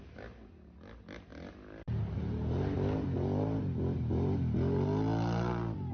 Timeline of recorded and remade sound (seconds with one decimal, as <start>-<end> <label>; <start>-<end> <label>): 0.0-5.9 recorded